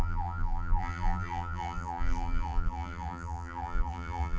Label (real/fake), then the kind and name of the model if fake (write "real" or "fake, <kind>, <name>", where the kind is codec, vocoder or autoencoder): fake, vocoder, BigVGAN v2